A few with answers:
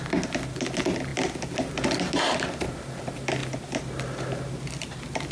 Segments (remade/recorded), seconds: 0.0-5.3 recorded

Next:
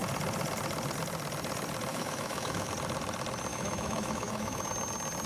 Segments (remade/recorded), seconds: 0.0-1.9 recorded; 1.9-2.7 remade; 2.7-3.5 recorded; 3.5-4.7 remade; 4.7-5.3 recorded

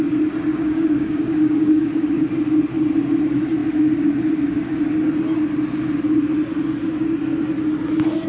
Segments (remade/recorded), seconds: 0.0-0.5 recorded; 0.5-2.3 remade; 2.3-8.3 recorded

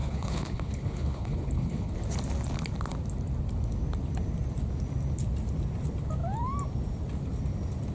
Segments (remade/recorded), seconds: 0.0-1.9 remade; 1.9-7.9 recorded

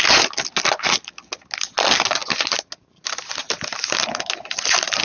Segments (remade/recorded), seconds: 0.0-5.0 recorded

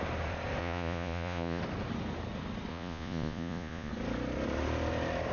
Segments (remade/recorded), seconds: 0.0-0.6 recorded; 0.6-1.6 remade; 1.6-2.7 recorded; 2.7-3.9 remade; 3.9-5.3 recorded